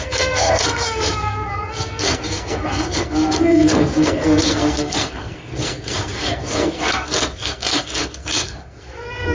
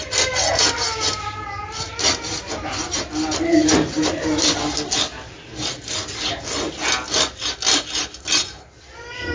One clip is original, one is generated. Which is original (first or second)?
second